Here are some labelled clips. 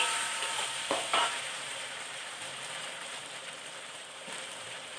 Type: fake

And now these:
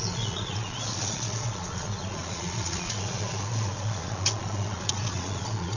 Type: fake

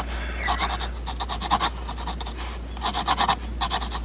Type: real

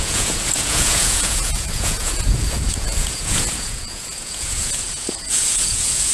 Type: fake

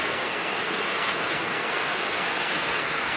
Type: fake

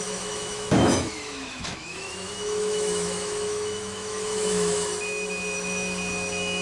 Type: fake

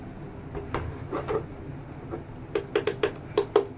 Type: real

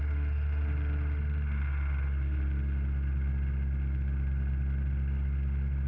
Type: real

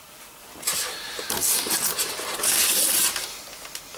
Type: real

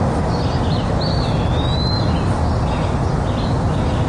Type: real